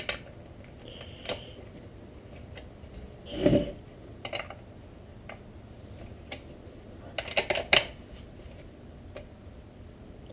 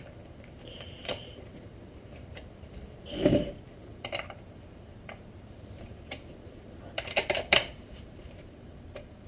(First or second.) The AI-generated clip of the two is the second